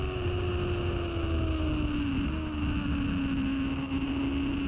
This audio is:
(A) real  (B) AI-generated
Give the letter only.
A